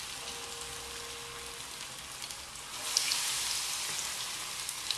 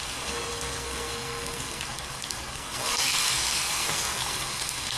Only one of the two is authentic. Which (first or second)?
first